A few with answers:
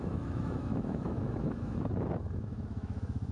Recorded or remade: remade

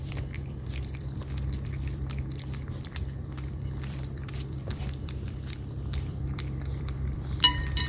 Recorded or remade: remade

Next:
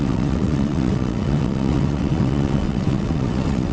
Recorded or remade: remade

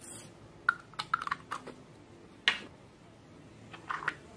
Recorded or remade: recorded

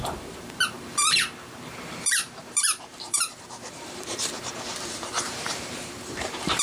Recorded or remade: remade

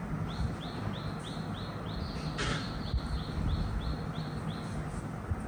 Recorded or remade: recorded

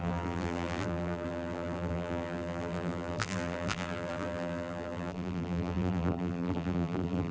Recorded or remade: remade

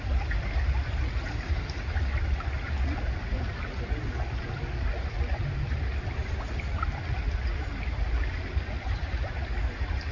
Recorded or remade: recorded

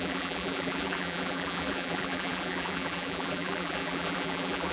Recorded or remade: remade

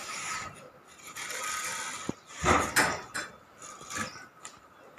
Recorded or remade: recorded